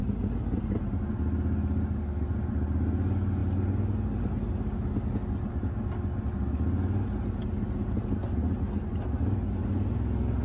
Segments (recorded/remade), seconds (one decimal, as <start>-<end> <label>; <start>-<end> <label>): 0.0-10.4 recorded